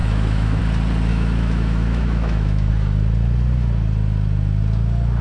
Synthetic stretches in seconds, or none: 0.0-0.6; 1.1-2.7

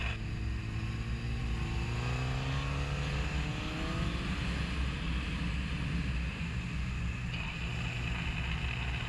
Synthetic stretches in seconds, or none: 6.3-7.3

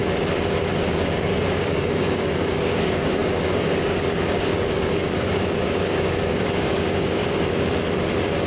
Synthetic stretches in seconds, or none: 0.9-7.2